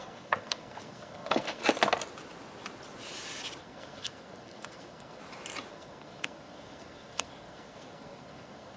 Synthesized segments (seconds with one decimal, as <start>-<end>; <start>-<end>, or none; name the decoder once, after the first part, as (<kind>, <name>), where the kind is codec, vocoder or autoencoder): 0.0-1.6 (codec, SNAC); 3.6-5.2; 5.7-8.8